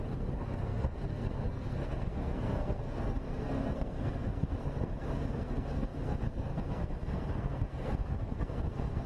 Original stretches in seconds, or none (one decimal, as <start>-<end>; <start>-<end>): none